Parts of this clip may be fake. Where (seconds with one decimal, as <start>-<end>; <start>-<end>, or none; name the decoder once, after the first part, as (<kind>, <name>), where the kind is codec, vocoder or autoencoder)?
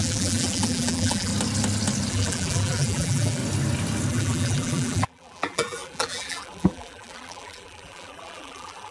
0.0-1.3 (vocoder, BigVGAN v2); 2.1-3.4; 4.1-8.9